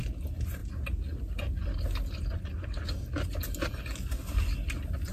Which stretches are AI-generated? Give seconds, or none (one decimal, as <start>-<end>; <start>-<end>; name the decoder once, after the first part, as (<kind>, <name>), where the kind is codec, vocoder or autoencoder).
none